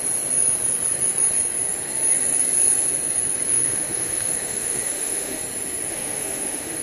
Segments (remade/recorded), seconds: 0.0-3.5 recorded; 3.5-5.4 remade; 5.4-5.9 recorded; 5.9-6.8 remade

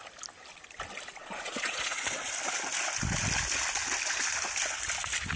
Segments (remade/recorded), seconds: 0.0-1.2 recorded; 1.2-2.3 remade; 2.3-5.4 recorded

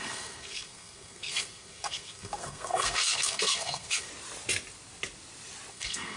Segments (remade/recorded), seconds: 0.0-4.1 remade; 4.1-5.7 recorded; 5.7-6.2 remade

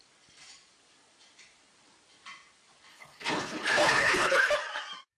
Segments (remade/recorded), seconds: 0.0-2.9 recorded; 2.9-4.5 remade; 4.5-5.2 recorded

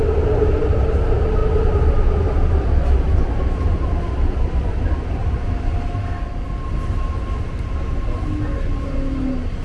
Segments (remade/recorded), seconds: 0.0-9.6 recorded

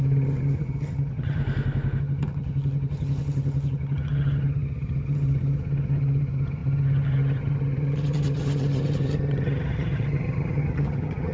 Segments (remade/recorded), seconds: 0.0-1.4 remade; 1.4-2.0 recorded; 2.0-11.3 remade